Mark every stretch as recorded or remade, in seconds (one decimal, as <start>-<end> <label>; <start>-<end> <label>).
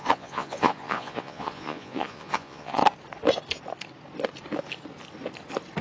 0.0-2.8 remade; 2.8-5.8 recorded